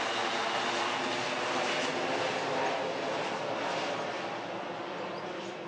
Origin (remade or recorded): recorded